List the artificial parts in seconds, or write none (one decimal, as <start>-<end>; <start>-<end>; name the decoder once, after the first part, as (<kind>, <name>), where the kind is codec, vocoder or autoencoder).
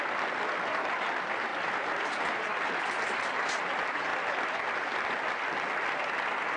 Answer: none